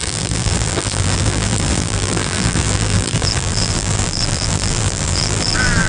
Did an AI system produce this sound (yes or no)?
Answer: yes